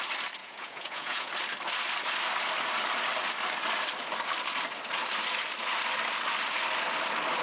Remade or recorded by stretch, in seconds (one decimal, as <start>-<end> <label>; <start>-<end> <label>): 0.0-0.4 recorded; 0.4-1.3 remade; 1.3-7.4 recorded